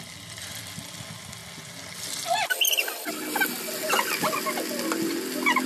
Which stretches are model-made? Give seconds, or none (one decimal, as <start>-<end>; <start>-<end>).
none